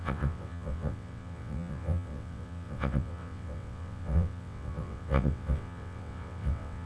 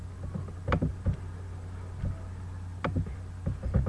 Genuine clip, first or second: second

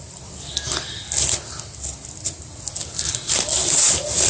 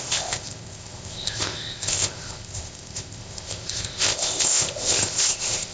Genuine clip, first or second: first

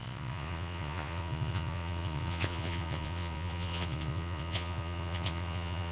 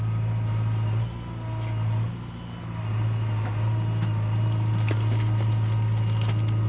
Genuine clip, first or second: second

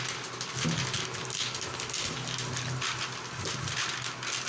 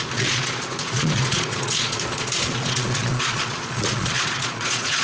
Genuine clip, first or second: first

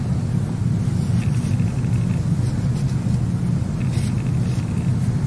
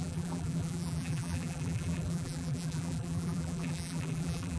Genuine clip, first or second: first